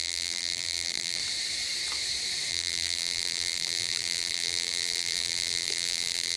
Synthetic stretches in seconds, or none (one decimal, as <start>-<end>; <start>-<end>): 0.0-1.2; 2.5-6.4